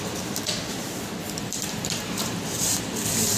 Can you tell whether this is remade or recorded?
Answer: remade